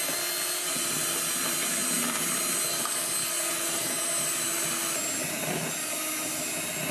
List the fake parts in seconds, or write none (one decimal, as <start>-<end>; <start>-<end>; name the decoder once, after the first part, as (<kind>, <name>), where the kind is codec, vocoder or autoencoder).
none